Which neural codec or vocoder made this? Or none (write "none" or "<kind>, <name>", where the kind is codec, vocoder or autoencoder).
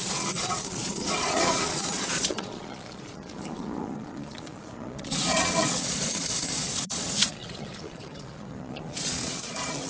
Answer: vocoder, Vocos